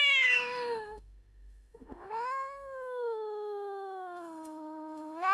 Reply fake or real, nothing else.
fake